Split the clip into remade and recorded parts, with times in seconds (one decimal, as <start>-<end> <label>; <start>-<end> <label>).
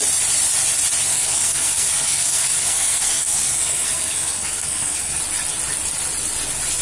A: 0.0-1.1 recorded; 1.1-5.2 remade; 5.2-6.8 recorded